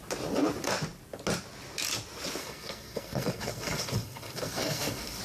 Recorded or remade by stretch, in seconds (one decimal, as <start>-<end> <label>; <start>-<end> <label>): 0.0-2.4 recorded; 2.4-5.2 remade